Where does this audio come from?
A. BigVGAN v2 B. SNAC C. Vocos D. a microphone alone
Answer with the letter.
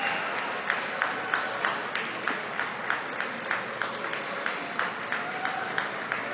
D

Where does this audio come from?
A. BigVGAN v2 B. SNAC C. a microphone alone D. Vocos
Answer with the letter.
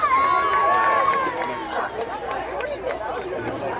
C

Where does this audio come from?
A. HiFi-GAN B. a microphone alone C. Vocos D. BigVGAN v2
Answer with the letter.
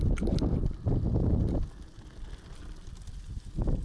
B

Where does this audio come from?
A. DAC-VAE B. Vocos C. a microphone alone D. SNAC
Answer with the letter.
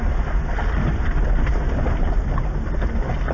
C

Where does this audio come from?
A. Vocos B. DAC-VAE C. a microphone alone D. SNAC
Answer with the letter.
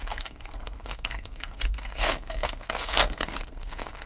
D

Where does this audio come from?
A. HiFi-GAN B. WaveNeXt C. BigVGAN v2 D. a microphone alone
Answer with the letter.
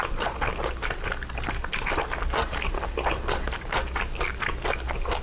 D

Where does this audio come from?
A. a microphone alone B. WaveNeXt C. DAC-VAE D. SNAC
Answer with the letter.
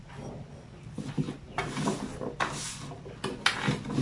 A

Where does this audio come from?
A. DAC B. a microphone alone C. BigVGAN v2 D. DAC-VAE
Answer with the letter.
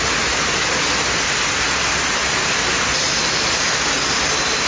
B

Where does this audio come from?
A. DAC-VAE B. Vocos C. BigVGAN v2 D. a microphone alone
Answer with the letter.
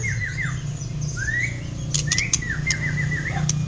D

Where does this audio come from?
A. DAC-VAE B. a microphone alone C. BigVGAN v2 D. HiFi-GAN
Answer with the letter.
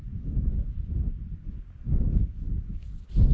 B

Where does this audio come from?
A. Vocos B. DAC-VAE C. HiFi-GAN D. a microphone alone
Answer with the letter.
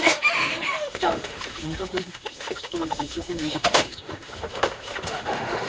B